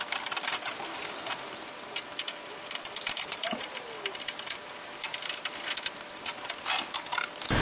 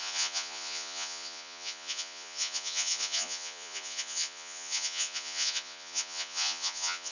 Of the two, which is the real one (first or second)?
first